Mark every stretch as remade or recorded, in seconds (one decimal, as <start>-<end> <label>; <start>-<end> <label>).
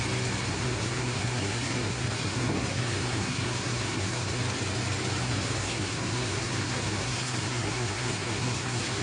0.0-0.5 recorded; 0.5-4.4 remade; 4.4-5.2 recorded; 5.2-9.0 remade